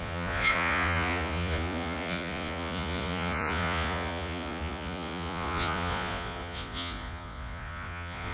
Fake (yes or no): yes